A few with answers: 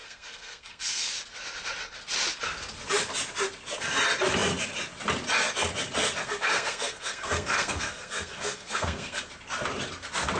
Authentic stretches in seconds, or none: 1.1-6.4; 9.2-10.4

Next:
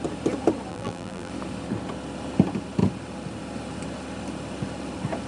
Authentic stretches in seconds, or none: 0.0-0.7; 1.3-5.3

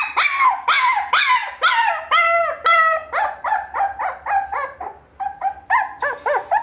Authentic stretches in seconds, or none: 0.0-6.6

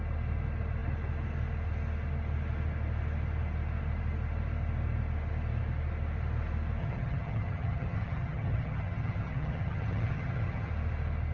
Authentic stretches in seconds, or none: 0.0-6.8; 10.7-11.3

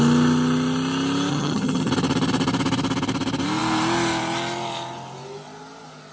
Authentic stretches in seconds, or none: 0.0-1.3; 1.9-6.1